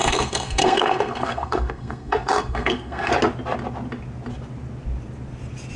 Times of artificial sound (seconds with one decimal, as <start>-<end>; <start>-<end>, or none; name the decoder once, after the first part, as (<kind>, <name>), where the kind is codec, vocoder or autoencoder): 0.0-3.1 (codec, SNAC)